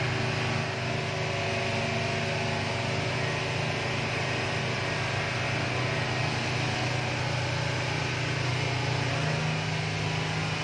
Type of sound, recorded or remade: recorded